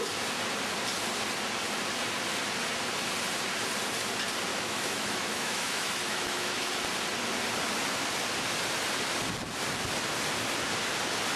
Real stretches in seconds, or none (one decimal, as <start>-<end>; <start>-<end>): 0.0-4.5; 6.7-11.4